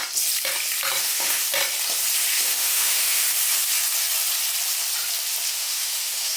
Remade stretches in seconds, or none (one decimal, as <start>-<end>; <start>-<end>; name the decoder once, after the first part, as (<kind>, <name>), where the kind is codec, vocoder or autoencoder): 1.0-1.5 (autoencoder, DAC-VAE); 2.3-3.2; 5.5-6.4